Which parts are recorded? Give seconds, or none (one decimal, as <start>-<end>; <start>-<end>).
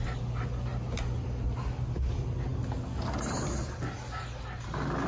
0.0-5.1